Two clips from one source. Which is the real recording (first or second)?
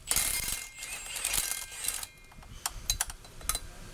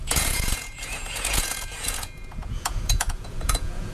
first